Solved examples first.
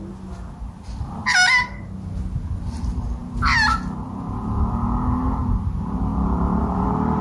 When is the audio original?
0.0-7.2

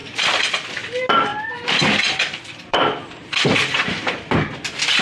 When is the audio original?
0.5-1.3; 4.3-5.0

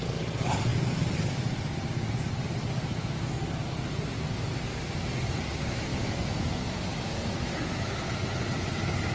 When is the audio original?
0.0-2.9; 3.4-5.9; 8.0-9.1

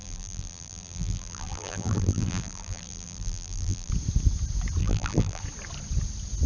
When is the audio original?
3.9-4.8; 5.4-6.5

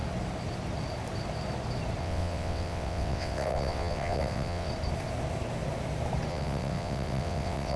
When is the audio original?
0.0-2.0; 4.7-6.3

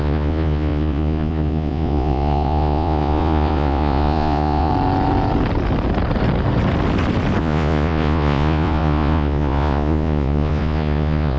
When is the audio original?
4.7-7.4